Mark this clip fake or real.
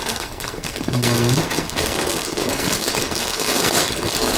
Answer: fake